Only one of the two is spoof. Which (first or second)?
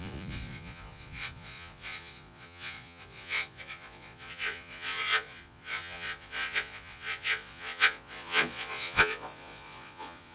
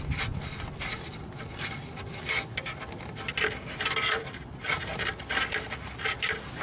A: first